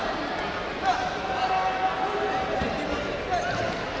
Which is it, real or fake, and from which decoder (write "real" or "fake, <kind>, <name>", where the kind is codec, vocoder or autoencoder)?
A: real